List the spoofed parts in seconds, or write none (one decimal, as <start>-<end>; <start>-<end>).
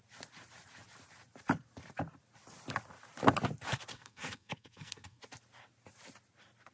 3.9-5.2